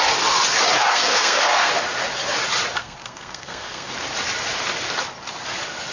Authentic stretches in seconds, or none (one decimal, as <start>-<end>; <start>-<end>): 0.0-0.9; 1.7-2.8; 3.9-5.9